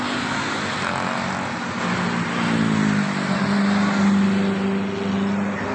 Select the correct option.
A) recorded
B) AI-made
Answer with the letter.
A